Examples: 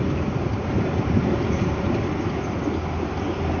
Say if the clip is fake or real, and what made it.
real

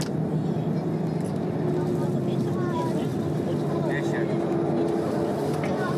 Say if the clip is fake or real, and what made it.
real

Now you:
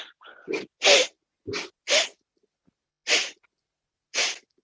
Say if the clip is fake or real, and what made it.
real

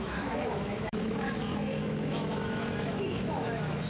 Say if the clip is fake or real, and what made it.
fake, autoencoder, DAC-VAE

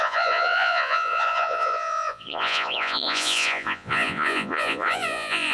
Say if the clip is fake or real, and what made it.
fake, vocoder, Vocos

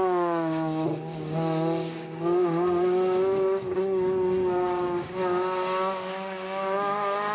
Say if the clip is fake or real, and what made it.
fake, codec, DAC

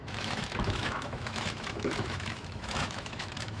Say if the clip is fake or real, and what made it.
fake, autoencoder, DAC-VAE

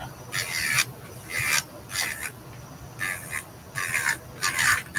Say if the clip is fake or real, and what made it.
real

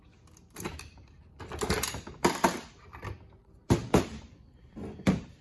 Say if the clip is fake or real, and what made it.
fake, vocoder, BigVGAN v2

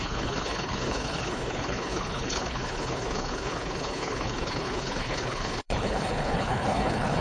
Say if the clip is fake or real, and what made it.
fake, codec, HILCodec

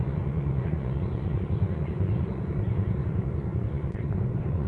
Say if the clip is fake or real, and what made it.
fake, vocoder, Vocos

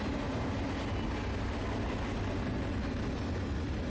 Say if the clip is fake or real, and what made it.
real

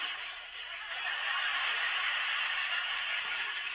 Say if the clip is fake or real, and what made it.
real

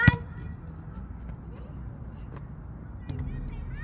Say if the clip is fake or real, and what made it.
real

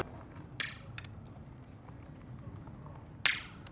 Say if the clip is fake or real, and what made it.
real